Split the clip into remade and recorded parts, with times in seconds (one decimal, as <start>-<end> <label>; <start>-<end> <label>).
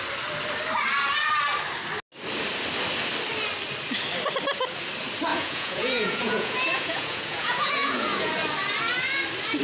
0.0-5.3 recorded; 5.3-8.3 remade; 8.3-9.6 recorded